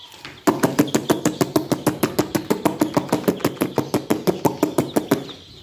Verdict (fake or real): real